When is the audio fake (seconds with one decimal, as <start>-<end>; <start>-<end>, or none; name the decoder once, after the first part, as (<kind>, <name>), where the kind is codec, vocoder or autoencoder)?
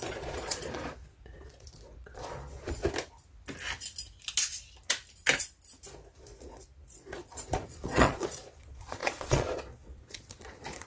0.0-2.8 (vocoder, Vocos); 6.2-10.9